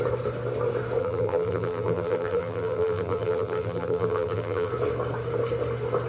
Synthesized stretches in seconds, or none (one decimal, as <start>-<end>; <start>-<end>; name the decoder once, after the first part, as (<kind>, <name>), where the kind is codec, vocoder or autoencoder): 1.0-4.7 (vocoder, BigVGAN v2)